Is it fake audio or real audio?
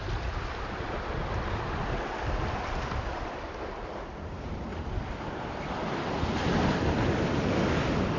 real